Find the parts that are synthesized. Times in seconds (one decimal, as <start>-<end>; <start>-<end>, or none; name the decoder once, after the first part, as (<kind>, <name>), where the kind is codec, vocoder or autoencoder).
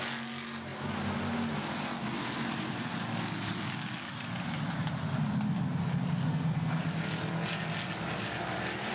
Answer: 6.3-6.8 (codec, SNAC)